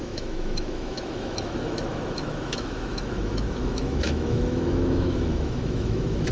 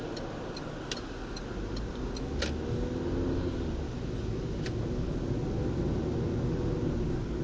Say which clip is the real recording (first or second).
second